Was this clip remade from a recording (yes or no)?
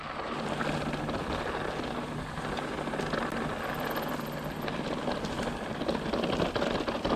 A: no